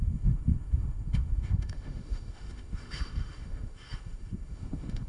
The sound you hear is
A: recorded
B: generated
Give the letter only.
B